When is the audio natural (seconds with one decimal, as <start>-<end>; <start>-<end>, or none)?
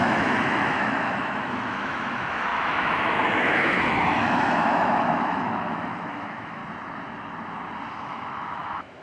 6.6-7.9